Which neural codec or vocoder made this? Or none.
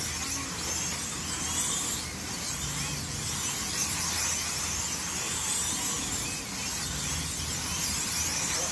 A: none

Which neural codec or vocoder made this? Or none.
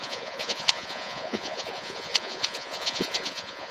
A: vocoder, Vocos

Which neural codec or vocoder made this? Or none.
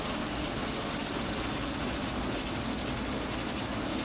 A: none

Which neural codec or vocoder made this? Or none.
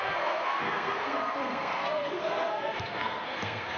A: codec, SNAC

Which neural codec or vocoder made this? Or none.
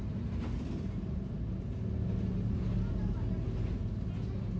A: none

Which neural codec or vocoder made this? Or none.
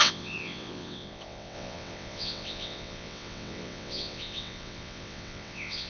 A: vocoder, WaveNeXt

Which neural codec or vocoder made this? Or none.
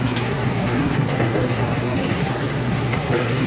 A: codec, SNAC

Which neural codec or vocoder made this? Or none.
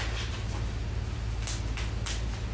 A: none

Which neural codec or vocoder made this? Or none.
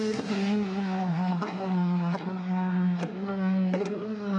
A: codec, SNAC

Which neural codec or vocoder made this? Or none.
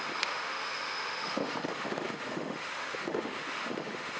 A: autoencoder, DAC-VAE